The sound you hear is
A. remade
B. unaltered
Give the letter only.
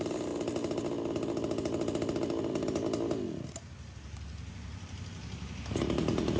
B